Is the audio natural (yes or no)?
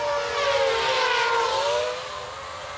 yes